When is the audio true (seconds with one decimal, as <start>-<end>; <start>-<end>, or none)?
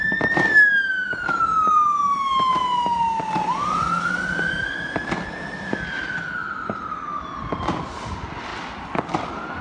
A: 0.0-9.6